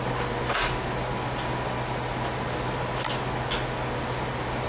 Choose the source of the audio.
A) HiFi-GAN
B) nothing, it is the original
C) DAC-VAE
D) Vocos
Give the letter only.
B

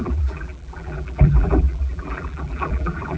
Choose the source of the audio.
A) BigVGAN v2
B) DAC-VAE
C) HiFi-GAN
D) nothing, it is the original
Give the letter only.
A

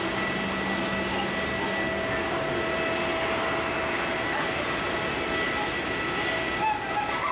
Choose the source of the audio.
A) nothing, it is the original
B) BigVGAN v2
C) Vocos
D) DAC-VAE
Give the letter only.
A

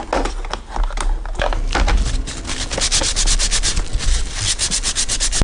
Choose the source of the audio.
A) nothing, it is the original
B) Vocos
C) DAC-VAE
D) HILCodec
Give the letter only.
A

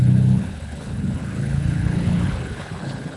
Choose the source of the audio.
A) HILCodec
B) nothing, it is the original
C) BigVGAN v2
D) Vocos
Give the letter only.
A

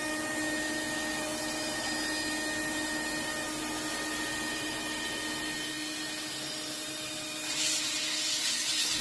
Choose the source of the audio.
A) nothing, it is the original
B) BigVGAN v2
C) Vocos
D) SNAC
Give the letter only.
A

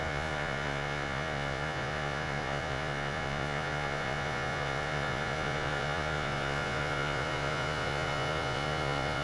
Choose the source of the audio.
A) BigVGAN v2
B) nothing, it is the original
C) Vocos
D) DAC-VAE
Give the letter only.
C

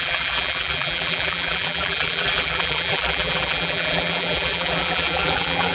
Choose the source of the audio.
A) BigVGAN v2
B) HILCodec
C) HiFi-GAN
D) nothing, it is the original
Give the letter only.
A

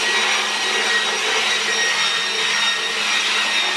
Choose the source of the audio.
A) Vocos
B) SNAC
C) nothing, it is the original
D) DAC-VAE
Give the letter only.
C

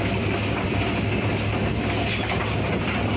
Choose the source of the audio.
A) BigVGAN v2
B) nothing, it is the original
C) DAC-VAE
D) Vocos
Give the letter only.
B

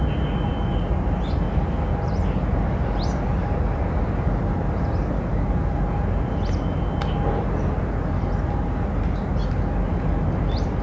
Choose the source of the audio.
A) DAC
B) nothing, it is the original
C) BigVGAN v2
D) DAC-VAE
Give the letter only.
B